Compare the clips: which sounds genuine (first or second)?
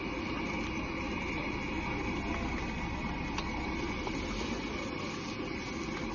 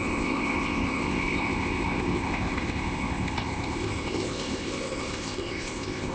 first